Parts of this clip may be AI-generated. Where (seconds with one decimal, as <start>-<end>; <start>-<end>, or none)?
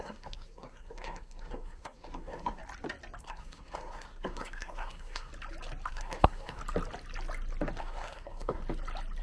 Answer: 0.0-2.6; 3.2-5.3; 5.9-6.6; 7.8-8.6